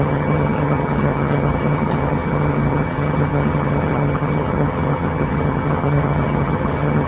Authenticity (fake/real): fake